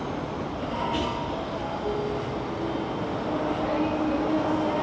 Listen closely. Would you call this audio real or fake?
real